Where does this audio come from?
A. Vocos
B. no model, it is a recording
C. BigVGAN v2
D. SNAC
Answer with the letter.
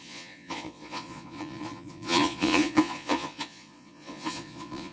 A